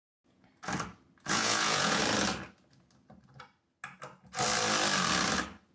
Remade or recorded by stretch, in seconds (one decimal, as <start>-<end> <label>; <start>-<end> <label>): 0.0-0.5 remade; 0.5-1.3 recorded; 1.3-2.0 remade; 2.0-5.7 recorded